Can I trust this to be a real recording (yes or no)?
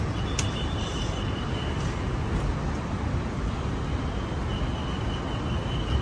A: yes